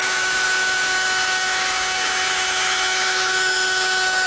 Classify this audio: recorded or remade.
remade